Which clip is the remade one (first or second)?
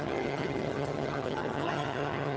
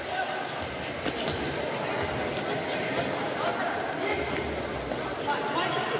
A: first